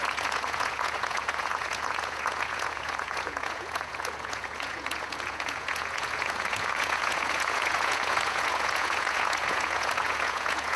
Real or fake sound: fake